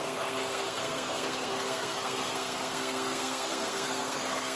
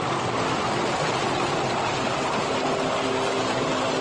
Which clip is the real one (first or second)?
second